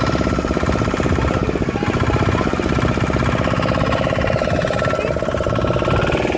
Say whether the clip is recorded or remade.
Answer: recorded